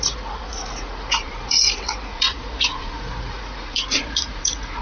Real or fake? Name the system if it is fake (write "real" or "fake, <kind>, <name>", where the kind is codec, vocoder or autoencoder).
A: fake, vocoder, Vocos